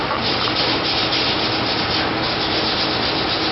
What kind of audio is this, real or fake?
real